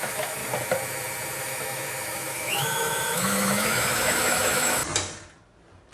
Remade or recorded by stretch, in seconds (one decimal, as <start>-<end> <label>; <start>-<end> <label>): 0.0-0.4 remade; 0.4-1.4 recorded; 1.4-4.8 remade; 4.8-5.9 recorded